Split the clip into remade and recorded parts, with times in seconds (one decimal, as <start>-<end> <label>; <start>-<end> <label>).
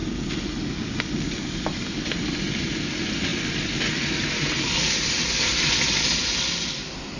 0.0-7.2 recorded